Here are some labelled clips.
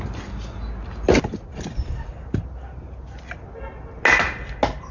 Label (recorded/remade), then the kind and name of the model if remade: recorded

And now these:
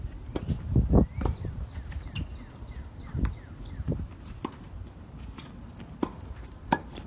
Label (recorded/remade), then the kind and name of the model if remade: recorded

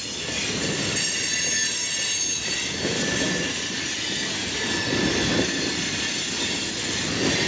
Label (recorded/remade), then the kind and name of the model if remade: recorded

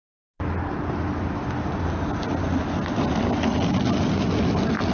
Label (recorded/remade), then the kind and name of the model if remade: recorded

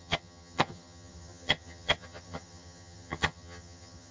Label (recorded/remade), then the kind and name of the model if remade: remade, vocoder, HiFi-GAN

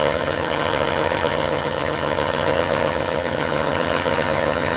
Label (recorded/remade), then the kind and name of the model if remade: remade, vocoder, HiFi-GAN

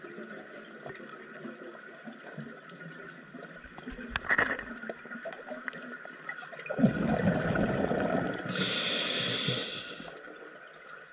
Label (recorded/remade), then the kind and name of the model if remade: recorded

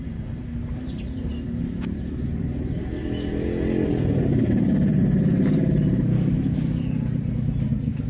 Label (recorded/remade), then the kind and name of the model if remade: recorded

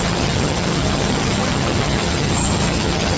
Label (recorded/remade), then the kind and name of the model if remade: remade, vocoder, HiFi-GAN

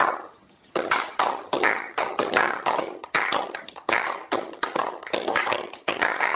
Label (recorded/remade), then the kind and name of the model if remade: remade, vocoder, HiFi-GAN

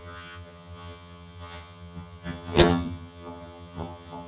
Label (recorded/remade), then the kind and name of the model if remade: remade, vocoder, HiFi-GAN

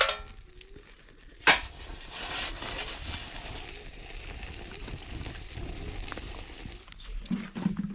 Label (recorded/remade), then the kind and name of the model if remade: recorded